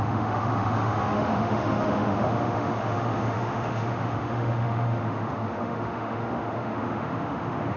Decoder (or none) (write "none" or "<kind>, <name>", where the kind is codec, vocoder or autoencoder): autoencoder, DAC-VAE